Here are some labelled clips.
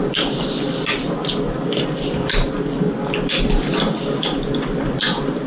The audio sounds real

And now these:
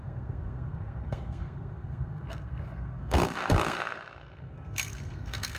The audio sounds fake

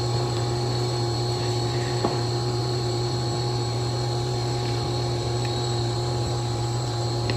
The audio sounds fake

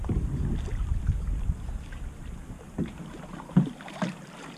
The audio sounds real